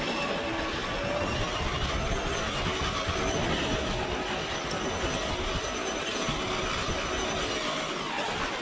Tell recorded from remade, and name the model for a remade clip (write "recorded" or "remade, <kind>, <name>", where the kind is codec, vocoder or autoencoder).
recorded